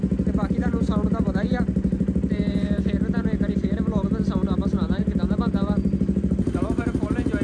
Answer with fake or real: real